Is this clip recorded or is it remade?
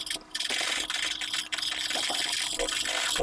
recorded